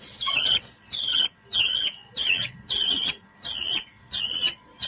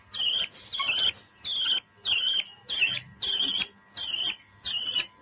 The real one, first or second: second